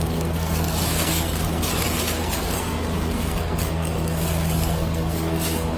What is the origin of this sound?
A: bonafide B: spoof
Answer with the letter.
B